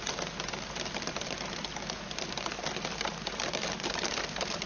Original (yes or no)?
yes